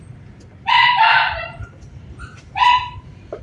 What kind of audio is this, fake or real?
fake